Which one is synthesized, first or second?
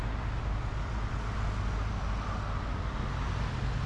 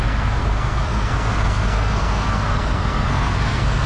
second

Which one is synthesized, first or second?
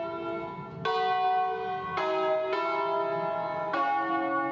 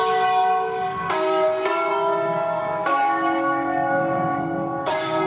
second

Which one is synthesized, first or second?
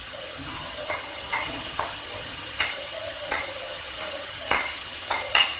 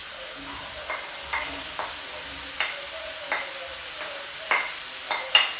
first